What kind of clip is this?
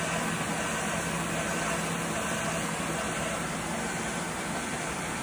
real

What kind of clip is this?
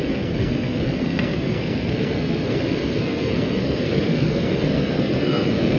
fake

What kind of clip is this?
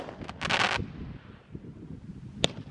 real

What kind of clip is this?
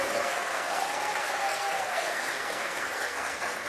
fake